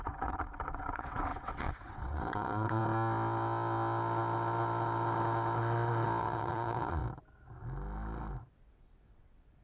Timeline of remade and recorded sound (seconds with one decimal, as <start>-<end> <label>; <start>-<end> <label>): 0.0-2.8 remade; 2.8-6.2 recorded; 6.2-7.0 remade; 7.0-8.5 recorded; 8.5-9.6 remade